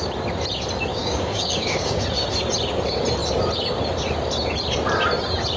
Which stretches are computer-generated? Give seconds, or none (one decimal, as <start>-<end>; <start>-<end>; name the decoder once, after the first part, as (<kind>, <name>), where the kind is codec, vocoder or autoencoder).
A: 0.9-2.0 (codec, DAC)